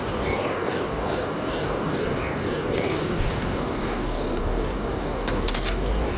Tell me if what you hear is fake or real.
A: fake